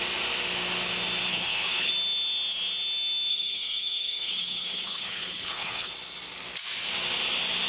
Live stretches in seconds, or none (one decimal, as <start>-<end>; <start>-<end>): 0.0-1.3; 1.9-3.3; 5.9-7.7